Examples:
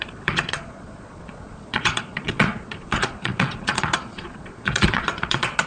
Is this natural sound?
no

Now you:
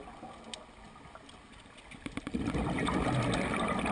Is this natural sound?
yes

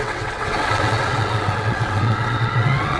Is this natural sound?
no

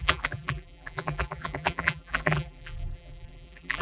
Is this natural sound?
no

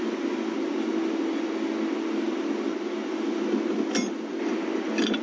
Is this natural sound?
yes